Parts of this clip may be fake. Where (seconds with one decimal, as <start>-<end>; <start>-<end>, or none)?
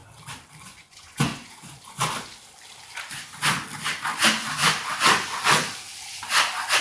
0.6-2.3